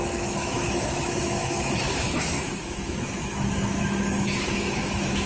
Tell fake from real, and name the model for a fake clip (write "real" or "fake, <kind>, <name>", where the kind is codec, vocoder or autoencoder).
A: fake, autoencoder, DAC-VAE